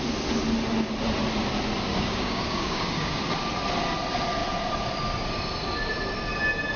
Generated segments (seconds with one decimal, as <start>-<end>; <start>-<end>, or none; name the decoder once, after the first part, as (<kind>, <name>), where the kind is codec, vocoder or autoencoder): 1.9-3.2 (codec, DAC)